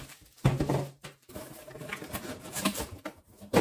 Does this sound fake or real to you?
fake